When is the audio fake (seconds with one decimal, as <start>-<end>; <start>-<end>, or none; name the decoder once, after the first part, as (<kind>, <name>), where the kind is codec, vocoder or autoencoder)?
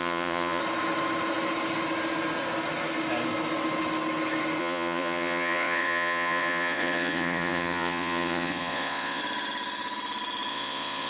0.0-0.6 (vocoder, Vocos); 4.6-9.2; 10.5-11.1